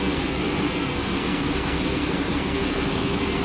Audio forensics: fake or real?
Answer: fake